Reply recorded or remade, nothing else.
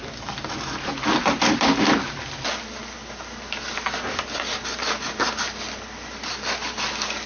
recorded